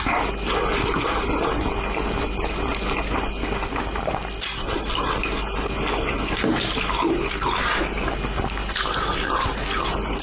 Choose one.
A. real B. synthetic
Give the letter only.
A